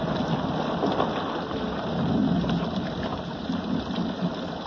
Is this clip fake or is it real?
real